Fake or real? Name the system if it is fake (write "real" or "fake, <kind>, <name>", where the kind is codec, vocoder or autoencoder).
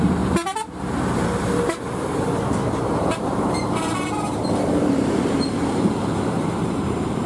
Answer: fake, vocoder, BigVGAN v2